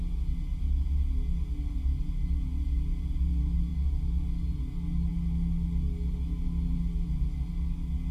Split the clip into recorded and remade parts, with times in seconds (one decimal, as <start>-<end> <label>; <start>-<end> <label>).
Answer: 0.0-8.1 recorded